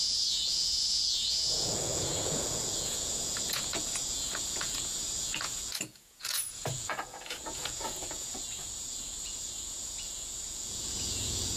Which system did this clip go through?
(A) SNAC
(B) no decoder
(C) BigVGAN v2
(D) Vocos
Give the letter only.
D